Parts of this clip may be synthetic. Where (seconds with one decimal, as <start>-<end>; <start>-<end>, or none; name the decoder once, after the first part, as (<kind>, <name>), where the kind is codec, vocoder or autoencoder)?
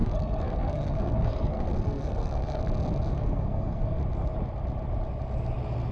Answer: 0.0-2.6 (codec, SNAC); 3.1-4.0